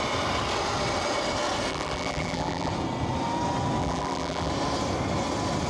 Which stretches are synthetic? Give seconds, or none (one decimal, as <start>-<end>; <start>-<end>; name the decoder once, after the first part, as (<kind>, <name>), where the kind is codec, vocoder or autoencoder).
1.7-2.7 (vocoder, BigVGAN v2); 3.8-4.5